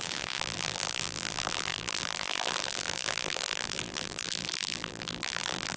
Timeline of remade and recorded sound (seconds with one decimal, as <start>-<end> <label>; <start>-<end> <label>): 0.0-5.8 remade